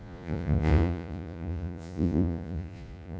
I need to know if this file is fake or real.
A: fake